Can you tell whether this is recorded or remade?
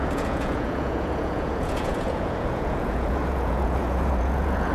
remade